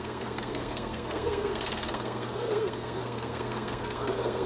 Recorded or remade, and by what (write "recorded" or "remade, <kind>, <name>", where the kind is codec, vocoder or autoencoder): remade, codec, SNAC